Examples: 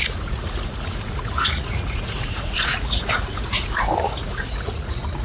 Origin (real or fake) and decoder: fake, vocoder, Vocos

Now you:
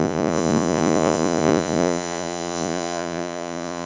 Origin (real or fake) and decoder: fake, vocoder, Vocos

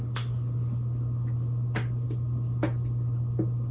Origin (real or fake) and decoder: real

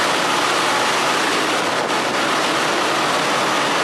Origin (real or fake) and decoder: real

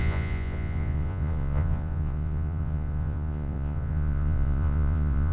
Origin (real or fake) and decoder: fake, vocoder, Vocos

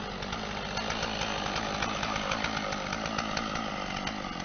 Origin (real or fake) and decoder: real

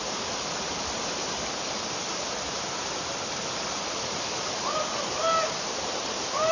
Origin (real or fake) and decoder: real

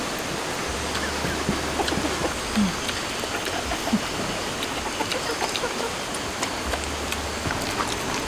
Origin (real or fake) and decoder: real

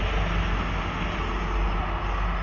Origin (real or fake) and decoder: real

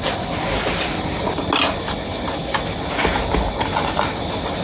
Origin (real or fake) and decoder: real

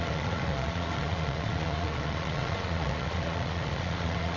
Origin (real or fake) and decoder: fake, vocoder, Vocos